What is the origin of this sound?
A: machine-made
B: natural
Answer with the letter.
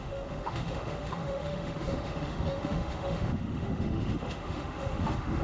A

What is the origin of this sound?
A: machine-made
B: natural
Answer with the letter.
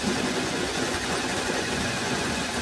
A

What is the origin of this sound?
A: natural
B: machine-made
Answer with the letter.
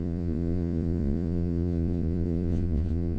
B